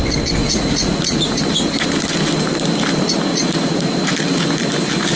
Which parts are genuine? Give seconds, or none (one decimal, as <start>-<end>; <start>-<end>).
0.0-0.4; 1.4-3.3; 3.9-5.2